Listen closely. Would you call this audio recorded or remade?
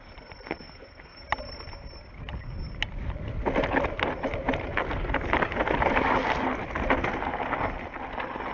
recorded